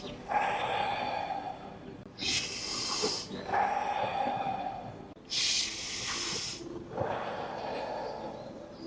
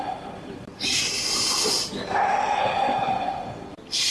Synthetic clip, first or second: second